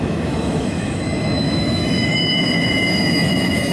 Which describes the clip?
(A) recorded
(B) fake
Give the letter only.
B